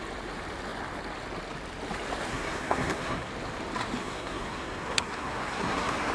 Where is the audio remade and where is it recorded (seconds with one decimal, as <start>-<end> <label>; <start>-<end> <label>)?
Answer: 0.0-2.3 recorded; 2.3-3.3 remade; 3.3-4.0 recorded; 4.0-6.1 remade

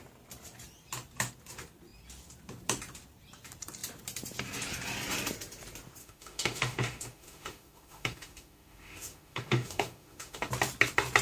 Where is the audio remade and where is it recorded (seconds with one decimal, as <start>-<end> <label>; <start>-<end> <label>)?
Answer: 0.0-6.0 recorded; 6.0-10.5 remade; 10.5-11.2 recorded

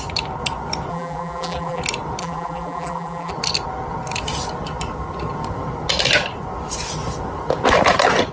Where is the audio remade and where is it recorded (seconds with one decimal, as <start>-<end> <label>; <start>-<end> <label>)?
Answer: 0.0-0.9 recorded; 0.9-1.8 remade; 1.8-2.2 recorded; 2.2-3.3 remade; 3.3-8.3 recorded

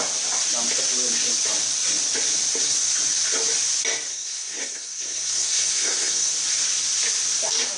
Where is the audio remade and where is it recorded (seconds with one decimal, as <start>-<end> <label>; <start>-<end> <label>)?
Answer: 0.0-4.1 recorded; 4.1-6.3 remade; 6.3-7.8 recorded